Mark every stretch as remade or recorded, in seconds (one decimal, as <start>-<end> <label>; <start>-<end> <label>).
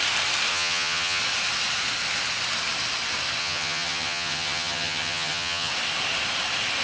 0.0-0.5 recorded; 0.5-1.2 remade; 1.2-3.4 recorded; 3.4-5.7 remade; 5.7-6.8 recorded